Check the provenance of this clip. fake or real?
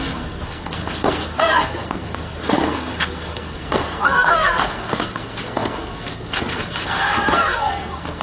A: fake